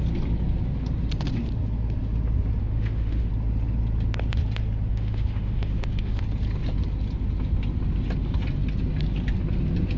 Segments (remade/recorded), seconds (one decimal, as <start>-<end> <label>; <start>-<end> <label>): 0.0-2.6 recorded; 2.6-3.3 remade; 3.3-4.9 recorded; 4.9-6.2 remade; 6.2-10.0 recorded